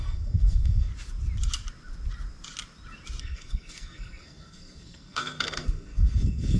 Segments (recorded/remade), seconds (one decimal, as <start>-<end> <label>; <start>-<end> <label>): 0.0-0.9 remade; 0.9-3.2 recorded; 3.2-6.6 remade